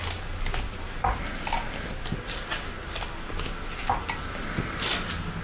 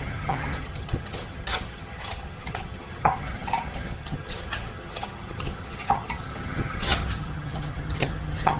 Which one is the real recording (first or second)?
first